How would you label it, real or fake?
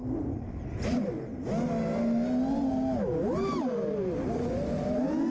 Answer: real